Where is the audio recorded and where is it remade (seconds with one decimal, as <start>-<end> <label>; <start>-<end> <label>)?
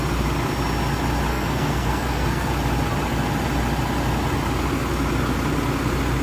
0.0-1.3 recorded; 1.3-2.5 remade; 2.5-6.2 recorded